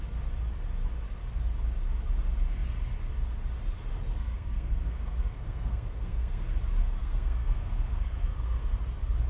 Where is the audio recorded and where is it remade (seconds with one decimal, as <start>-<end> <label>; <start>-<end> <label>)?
0.0-3.9 recorded; 3.9-6.4 remade; 6.4-7.0 recorded; 7.0-8.6 remade; 8.6-9.3 recorded